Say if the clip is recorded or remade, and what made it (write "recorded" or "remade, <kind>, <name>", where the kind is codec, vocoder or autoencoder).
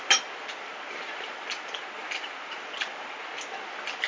recorded